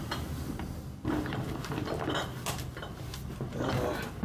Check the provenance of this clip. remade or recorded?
recorded